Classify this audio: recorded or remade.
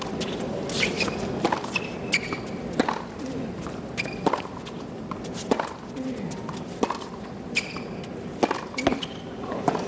recorded